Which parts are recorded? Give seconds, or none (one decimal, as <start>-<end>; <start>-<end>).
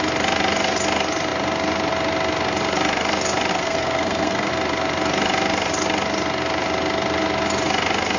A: 0.0-3.5; 4.5-8.2